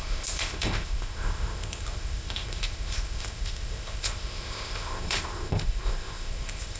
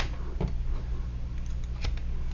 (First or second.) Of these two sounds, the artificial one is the first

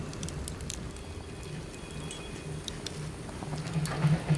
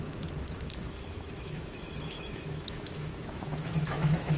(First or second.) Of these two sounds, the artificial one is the second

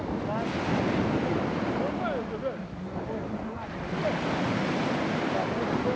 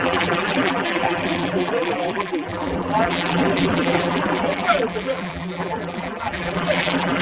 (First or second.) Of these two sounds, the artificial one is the second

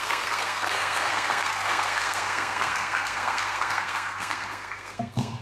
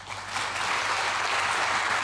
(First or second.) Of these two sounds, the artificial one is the first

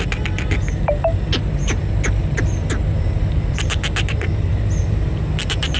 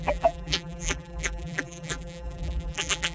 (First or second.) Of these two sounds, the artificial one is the second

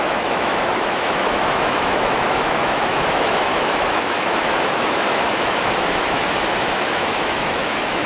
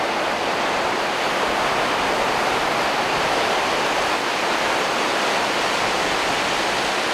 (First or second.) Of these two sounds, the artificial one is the first